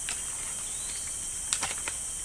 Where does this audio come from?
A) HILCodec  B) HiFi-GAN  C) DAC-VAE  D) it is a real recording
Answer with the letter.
D